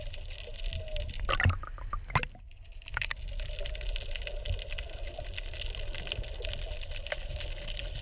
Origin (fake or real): real